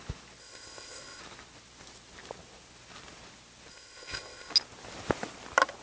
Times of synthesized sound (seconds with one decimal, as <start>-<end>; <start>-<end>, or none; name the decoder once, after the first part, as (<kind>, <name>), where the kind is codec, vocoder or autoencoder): 0.4-1.2 (codec, ZipCodec); 3.7-4.5